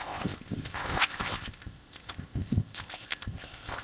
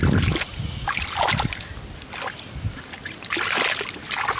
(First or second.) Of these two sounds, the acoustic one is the second